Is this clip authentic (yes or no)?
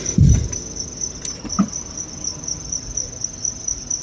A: no